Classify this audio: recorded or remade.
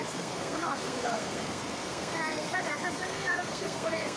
remade